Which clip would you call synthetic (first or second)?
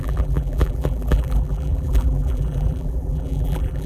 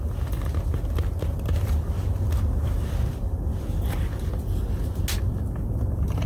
first